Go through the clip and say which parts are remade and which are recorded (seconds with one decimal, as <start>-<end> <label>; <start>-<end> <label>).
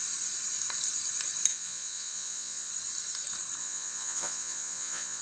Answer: 0.0-1.5 recorded; 1.5-2.7 remade; 2.7-3.6 recorded; 3.6-5.2 remade